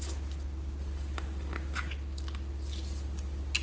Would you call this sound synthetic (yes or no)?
no